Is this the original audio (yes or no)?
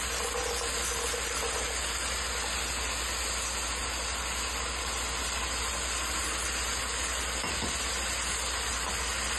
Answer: yes